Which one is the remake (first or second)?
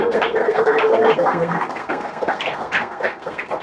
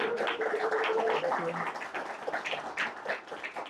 first